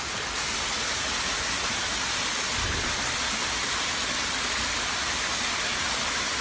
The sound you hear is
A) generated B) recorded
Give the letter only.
B